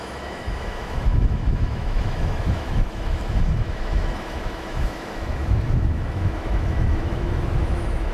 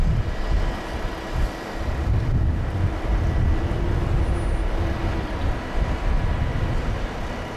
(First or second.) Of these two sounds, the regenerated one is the first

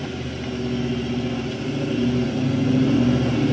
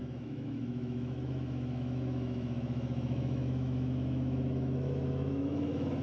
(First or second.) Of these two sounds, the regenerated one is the second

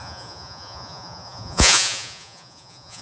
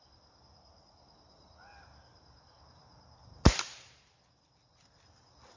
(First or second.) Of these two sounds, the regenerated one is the first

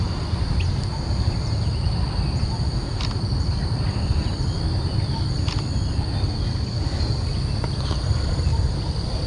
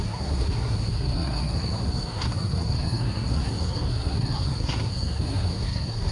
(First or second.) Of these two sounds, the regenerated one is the second